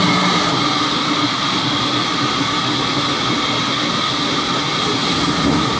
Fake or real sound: real